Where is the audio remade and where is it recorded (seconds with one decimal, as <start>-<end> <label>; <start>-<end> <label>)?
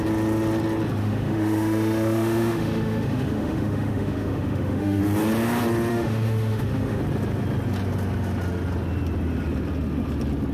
0.0-1.0 recorded; 1.0-5.0 remade; 5.0-5.9 recorded; 5.9-7.0 remade; 7.0-10.5 recorded